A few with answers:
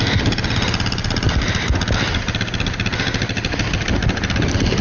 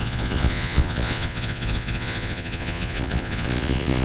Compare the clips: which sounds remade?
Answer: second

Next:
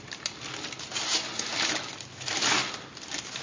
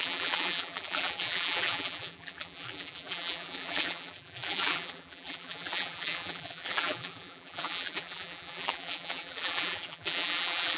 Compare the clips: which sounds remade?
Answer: second